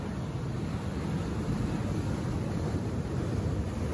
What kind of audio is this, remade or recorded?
recorded